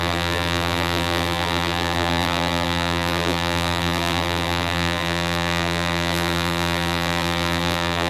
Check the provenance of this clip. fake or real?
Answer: fake